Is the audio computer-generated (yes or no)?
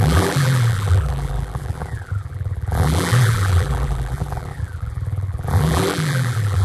yes